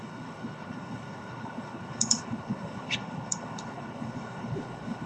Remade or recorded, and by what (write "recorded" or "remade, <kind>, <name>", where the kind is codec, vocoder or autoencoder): remade, codec, HILCodec